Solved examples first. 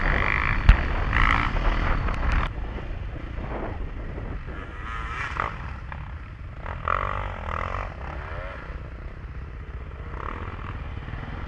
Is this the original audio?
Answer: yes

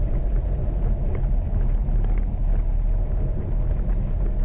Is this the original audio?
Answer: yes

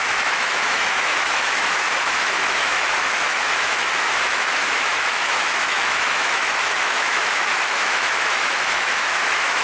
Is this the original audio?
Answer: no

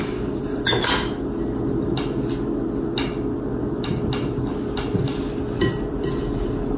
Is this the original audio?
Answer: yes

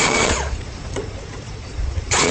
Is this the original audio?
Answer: no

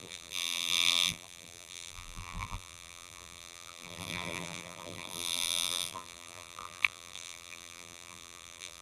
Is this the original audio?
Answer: no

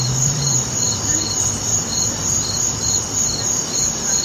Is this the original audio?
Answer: no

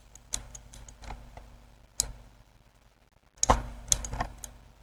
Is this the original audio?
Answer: yes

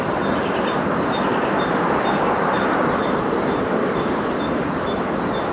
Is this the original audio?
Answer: yes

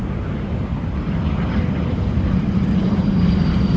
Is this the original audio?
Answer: yes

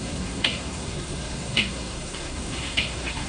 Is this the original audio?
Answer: no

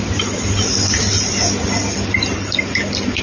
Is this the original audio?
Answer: yes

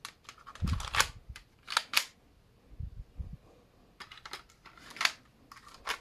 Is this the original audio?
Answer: yes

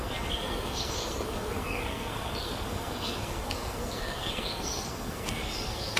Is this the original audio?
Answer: no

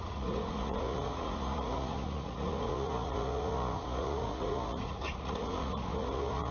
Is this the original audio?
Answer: no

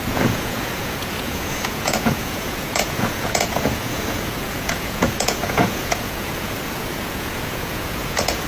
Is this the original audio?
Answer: no